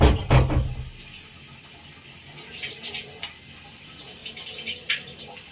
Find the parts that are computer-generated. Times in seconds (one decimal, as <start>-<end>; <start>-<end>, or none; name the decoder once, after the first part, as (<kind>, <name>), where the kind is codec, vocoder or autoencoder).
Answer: none

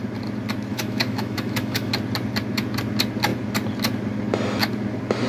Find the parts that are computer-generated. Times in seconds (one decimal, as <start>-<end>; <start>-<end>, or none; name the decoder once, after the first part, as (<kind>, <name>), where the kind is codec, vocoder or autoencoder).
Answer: 0.7-1.9 (autoencoder, DAC-VAE)

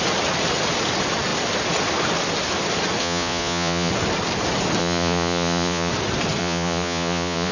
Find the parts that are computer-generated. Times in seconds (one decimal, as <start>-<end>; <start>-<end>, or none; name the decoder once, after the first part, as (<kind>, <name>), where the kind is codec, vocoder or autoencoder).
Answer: 3.0-3.9 (vocoder, Vocos); 4.8-5.9; 6.4-7.5

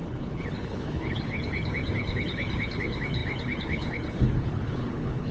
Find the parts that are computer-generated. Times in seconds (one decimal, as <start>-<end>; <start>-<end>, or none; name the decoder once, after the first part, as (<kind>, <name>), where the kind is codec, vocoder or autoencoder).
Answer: 0.0-5.3 (codec, HILCodec)

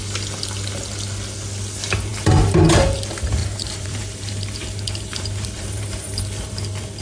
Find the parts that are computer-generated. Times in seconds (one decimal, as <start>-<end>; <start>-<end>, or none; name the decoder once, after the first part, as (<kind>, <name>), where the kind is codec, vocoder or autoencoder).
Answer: 2.1-2.7 (vocoder, BigVGAN v2); 3.4-6.2